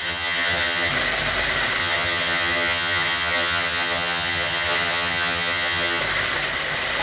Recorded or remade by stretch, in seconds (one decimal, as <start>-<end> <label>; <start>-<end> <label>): 0.0-0.9 remade; 0.9-1.8 recorded; 1.8-6.0 remade; 6.0-7.0 recorded